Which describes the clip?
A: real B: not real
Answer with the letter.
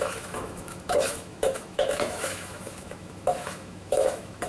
B